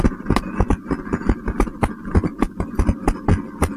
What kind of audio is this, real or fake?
real